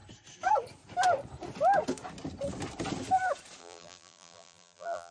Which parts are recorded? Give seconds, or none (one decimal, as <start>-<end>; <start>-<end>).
0.0-3.6